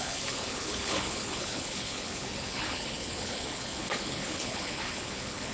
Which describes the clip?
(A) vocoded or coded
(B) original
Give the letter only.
A